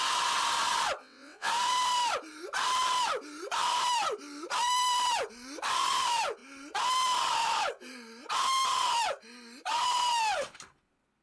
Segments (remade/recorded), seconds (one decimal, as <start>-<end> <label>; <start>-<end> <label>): 0.0-1.0 recorded; 1.0-1.5 remade; 1.5-11.2 recorded